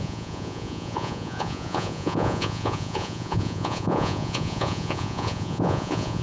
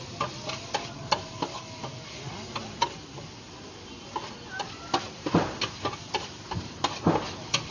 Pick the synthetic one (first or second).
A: first